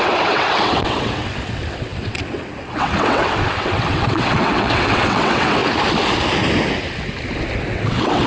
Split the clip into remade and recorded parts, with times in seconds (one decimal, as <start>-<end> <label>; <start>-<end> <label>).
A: 0.0-5.6 remade; 5.6-7.7 recorded; 7.7-8.3 remade